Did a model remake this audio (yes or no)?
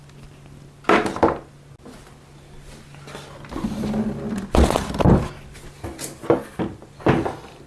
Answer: no